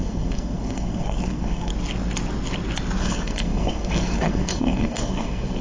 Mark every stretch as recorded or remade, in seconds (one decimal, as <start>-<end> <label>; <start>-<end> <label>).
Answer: 0.0-1.7 remade; 1.7-3.0 recorded; 3.0-5.6 remade